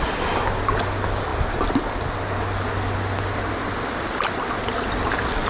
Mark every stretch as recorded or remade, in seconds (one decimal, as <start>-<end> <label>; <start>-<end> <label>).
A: 0.0-5.5 recorded